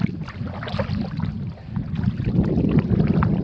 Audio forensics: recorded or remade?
recorded